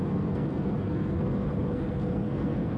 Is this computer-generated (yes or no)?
yes